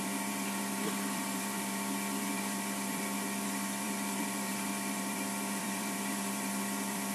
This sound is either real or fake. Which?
fake